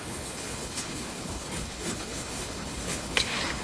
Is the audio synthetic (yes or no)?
yes